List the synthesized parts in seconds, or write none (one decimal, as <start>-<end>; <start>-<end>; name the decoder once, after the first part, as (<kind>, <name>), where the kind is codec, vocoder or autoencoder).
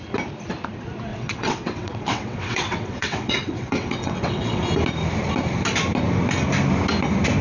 1.1-4.6 (vocoder, WaveNeXt)